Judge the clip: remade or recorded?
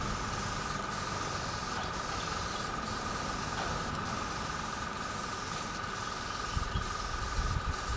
recorded